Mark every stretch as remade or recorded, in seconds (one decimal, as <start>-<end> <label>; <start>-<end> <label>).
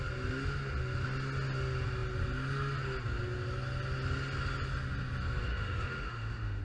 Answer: 0.0-5.5 recorded; 5.5-6.6 remade